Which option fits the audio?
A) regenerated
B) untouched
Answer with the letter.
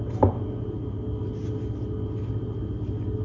B